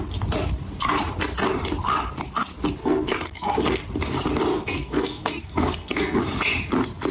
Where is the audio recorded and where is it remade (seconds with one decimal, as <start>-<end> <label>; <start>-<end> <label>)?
0.0-2.8 recorded; 2.8-3.8 remade; 3.8-4.5 recorded; 4.5-6.2 remade; 6.2-7.1 recorded